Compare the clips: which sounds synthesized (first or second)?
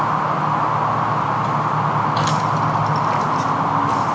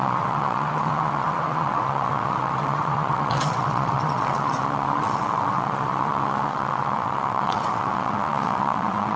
second